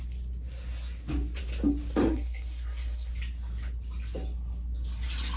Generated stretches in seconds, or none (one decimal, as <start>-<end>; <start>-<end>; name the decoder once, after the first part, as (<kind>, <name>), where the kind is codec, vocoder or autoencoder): 2.0-3.1 (codec, SNAC)